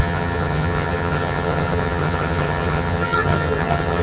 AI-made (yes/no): yes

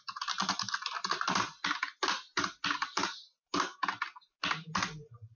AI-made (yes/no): no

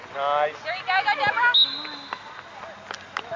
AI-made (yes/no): no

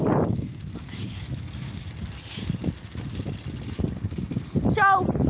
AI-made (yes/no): no